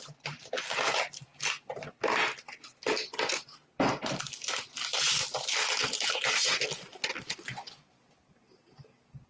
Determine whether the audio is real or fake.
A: real